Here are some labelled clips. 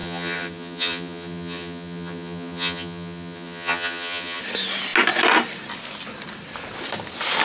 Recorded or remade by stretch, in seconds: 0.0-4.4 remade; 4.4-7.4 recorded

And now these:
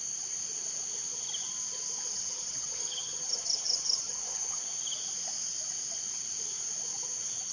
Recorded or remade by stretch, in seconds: 0.0-2.1 recorded; 2.1-4.6 remade; 4.6-7.5 recorded

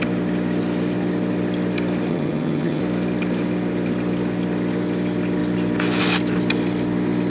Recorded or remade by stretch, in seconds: 0.0-2.1 recorded; 2.1-2.8 remade; 2.8-7.3 recorded

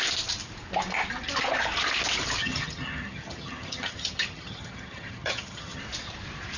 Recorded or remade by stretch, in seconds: 0.0-2.4 recorded; 2.4-5.8 remade; 5.8-6.6 recorded

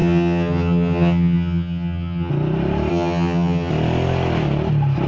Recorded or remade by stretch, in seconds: 0.0-2.3 remade; 2.3-2.9 recorded; 2.9-3.7 remade; 3.7-5.1 recorded